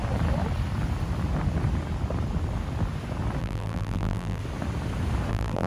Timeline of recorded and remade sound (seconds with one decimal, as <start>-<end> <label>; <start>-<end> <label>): 0.0-3.4 recorded; 3.4-4.4 remade; 4.4-5.3 recorded; 5.3-5.7 remade